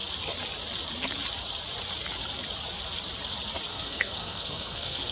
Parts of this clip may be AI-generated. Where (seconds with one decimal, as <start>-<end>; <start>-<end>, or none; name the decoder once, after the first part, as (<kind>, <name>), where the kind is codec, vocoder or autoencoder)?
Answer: 3.7-5.1 (codec, SNAC)